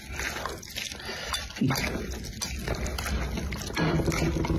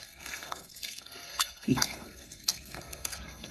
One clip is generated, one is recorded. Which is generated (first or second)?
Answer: second